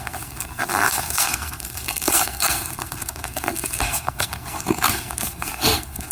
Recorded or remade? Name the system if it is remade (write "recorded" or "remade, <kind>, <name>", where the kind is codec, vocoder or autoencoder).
remade, codec, SNAC